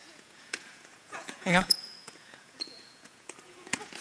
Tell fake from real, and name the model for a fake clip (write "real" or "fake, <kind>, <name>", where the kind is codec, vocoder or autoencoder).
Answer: fake, vocoder, Vocos